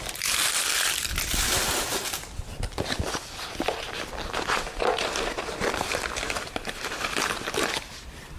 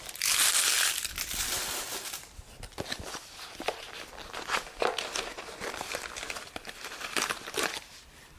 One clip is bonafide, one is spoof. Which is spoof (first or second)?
first